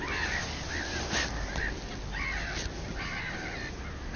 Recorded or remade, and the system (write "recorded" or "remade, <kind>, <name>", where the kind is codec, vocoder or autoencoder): recorded